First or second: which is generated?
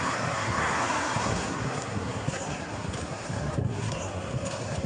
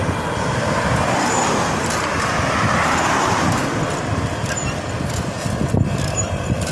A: first